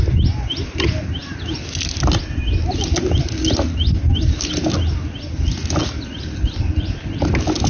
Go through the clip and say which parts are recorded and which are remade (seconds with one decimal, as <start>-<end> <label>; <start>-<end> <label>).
0.0-7.7 recorded